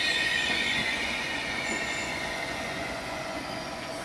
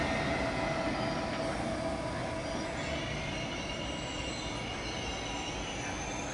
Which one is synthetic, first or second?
first